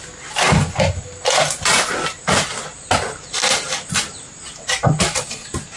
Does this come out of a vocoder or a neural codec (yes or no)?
no